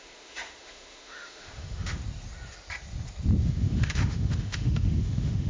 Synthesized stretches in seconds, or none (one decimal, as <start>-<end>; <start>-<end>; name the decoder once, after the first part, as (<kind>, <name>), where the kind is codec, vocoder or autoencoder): 0.0-2.0 (autoencoder, DAC-VAE); 3.4-5.5